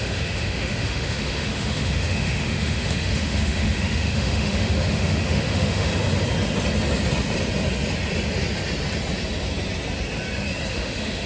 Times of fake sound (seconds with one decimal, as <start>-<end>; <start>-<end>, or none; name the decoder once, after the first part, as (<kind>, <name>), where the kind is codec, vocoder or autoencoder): 0.0-5.9 (autoencoder, DAC-VAE); 10.7-11.3